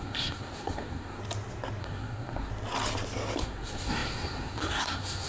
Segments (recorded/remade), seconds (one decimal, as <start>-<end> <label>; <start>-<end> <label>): 0.0-1.2 remade; 1.2-1.8 recorded; 1.8-2.5 remade; 2.5-3.4 recorded; 3.4-5.3 remade

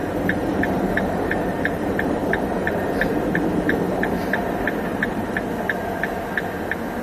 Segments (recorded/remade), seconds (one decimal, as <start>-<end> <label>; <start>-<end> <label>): 0.0-4.1 remade; 4.1-4.9 recorded; 4.9-5.5 remade; 5.5-7.0 recorded

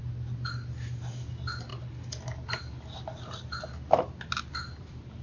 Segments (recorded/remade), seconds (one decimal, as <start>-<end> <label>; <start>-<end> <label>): 0.0-5.2 recorded